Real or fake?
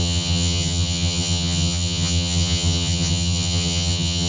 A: fake